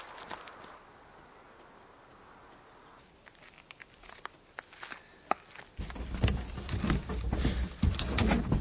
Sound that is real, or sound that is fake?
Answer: real